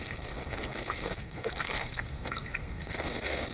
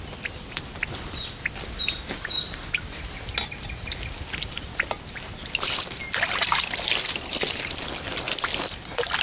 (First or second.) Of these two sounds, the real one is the second